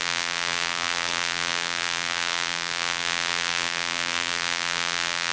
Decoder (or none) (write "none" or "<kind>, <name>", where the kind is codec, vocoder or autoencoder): vocoder, BigVGAN v2